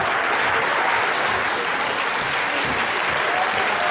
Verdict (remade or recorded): recorded